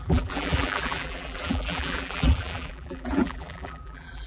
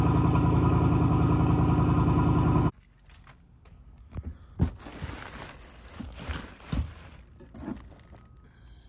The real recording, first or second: second